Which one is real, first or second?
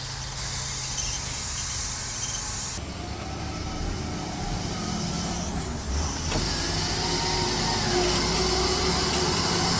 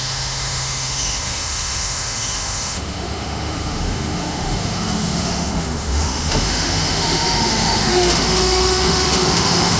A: first